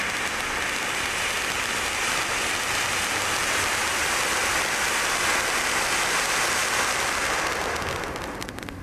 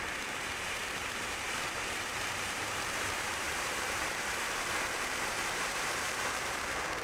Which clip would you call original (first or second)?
first